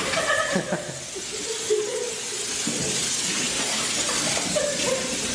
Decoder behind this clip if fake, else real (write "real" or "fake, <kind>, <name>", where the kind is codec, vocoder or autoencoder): real